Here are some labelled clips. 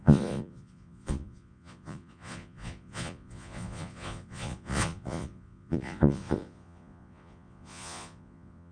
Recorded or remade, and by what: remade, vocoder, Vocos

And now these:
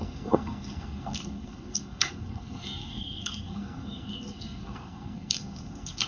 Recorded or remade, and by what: remade, codec, SNAC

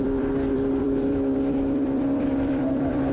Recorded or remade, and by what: remade, vocoder, BigVGAN v2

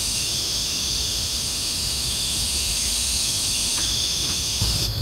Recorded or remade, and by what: remade, autoencoder, DAC-VAE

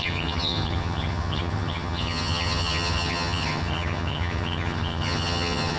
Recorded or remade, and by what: remade, vocoder, HiFi-GAN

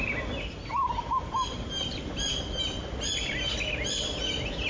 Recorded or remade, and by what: recorded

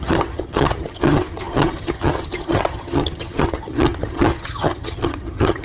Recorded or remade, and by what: remade, vocoder, HiFi-GAN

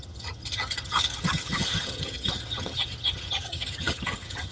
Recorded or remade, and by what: remade, vocoder, HiFi-GAN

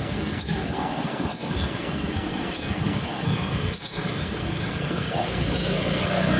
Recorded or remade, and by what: remade, codec, SNAC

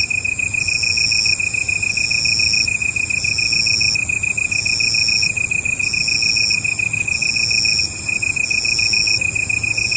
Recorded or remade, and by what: recorded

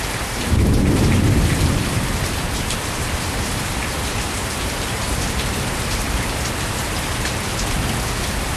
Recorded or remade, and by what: remade, vocoder, BigVGAN v2